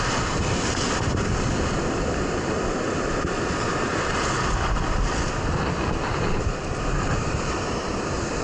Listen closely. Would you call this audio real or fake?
real